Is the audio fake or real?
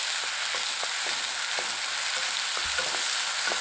real